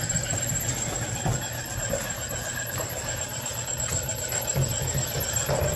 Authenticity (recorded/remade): recorded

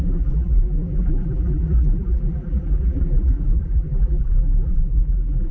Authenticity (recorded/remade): remade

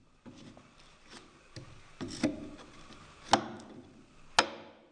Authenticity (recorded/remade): recorded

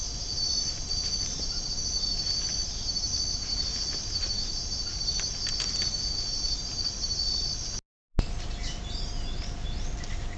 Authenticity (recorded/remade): recorded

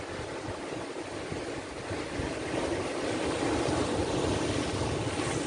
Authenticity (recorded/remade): recorded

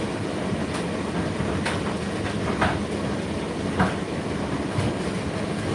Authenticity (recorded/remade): recorded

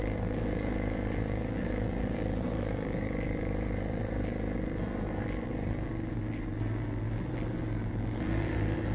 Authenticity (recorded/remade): remade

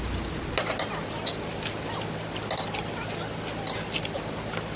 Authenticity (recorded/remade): recorded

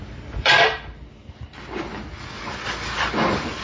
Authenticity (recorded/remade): recorded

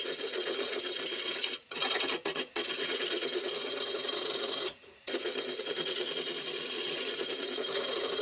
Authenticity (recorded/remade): remade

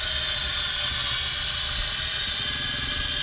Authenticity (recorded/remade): recorded